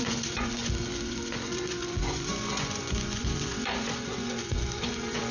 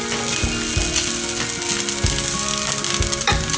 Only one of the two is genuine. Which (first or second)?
second